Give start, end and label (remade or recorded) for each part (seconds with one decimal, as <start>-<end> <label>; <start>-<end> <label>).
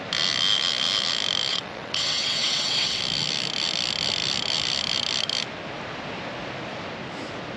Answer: 0.0-1.5 recorded; 1.5-3.0 remade; 3.0-7.6 recorded